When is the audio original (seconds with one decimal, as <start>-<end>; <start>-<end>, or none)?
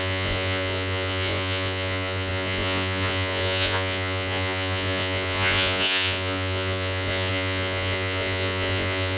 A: none